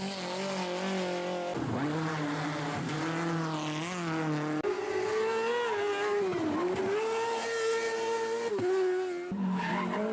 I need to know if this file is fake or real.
real